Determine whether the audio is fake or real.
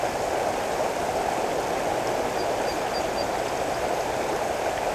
real